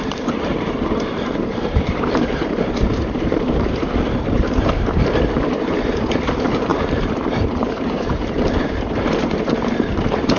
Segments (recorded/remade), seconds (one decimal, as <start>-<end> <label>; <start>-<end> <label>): 0.0-10.4 remade